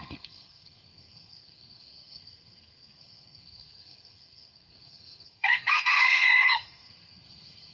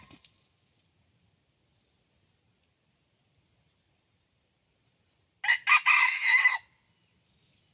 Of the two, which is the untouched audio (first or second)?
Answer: second